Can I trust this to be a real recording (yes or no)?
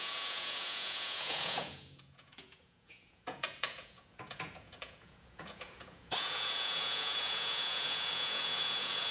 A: no